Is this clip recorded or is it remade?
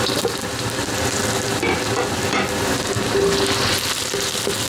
recorded